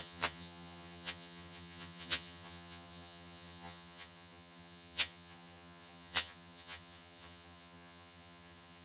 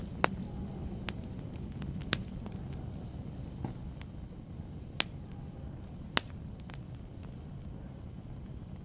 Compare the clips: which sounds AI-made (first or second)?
first